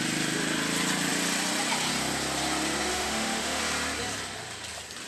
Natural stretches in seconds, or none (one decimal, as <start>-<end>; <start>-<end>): 0.0-2.9; 3.6-5.1